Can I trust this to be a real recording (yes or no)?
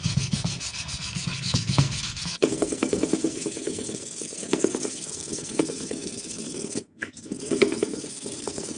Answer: no